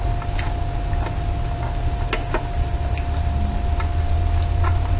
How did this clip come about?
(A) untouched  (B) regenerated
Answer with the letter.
A